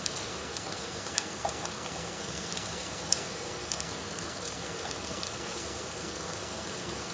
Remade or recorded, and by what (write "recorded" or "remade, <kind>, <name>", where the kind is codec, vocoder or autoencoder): remade, codec, SNAC